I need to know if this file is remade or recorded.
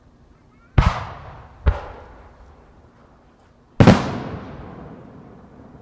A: recorded